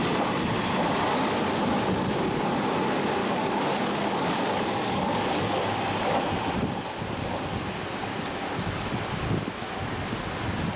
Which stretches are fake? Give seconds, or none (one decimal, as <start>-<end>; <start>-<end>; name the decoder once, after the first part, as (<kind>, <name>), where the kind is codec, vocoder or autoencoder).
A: 3.2-5.6 (codec, DAC)